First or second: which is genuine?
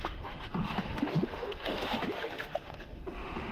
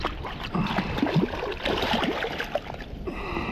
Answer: second